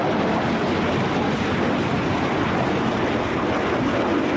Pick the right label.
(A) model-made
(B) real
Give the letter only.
B